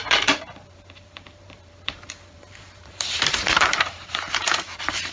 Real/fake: fake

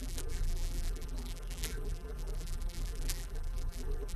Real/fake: fake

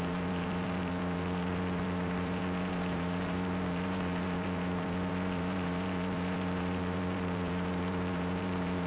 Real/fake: fake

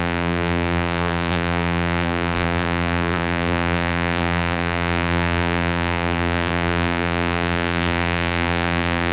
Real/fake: fake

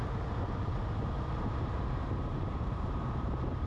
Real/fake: fake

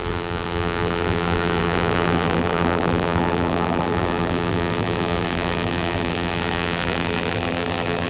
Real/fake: fake